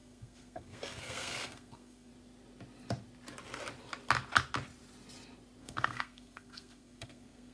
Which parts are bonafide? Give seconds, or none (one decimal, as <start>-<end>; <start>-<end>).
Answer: 2.1-5.6